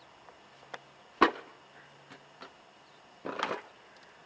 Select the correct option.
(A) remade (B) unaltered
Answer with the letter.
B